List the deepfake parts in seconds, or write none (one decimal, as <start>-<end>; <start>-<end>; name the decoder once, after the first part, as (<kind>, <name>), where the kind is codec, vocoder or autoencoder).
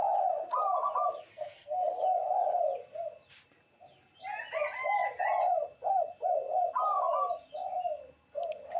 1.3-2.0 (codec, SNAC)